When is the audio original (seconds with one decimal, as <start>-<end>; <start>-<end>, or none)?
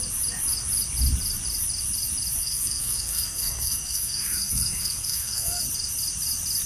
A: 0.0-2.4; 5.6-6.7